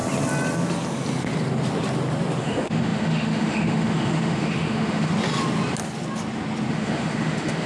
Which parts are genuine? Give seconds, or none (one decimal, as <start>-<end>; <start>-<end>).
0.0-2.4; 5.1-6.7